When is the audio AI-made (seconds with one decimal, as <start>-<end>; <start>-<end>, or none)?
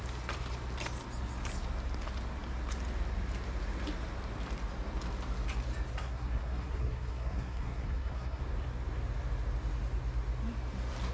5.9-8.4